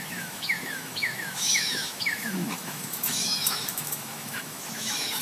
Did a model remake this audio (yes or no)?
yes